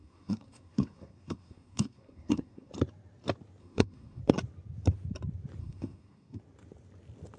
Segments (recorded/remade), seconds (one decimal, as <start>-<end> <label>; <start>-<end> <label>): 0.0-2.7 remade; 2.7-3.6 recorded; 3.6-4.2 remade; 4.2-5.6 recorded; 5.6-6.4 remade; 6.4-7.4 recorded